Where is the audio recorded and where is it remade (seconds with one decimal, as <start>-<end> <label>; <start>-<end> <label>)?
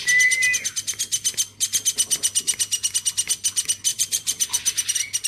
0.0-3.9 recorded; 3.9-4.6 remade; 4.6-5.3 recorded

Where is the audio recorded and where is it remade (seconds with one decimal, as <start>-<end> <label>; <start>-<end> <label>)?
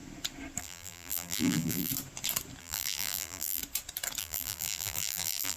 0.0-0.6 recorded; 0.6-1.9 remade; 1.9-2.6 recorded; 2.6-3.6 remade; 3.6-4.2 recorded; 4.2-5.6 remade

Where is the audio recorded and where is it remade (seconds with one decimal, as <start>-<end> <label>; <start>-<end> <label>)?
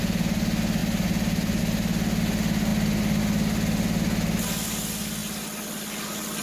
0.0-0.8 recorded; 0.8-1.6 remade; 1.6-6.4 recorded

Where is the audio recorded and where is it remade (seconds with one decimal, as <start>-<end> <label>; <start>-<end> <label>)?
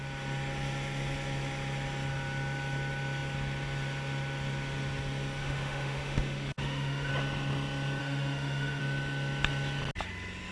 0.0-5.4 recorded; 5.4-7.1 remade; 7.1-8.0 recorded; 8.0-8.8 remade; 8.8-10.5 recorded